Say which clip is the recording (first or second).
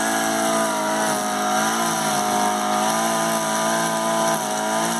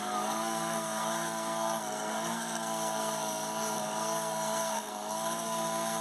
first